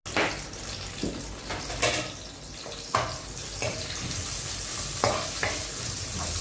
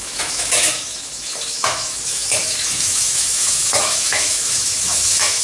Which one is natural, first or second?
first